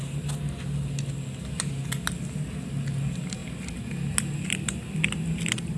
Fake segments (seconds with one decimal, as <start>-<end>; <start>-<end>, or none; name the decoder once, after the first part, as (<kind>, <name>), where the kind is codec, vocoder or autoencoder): none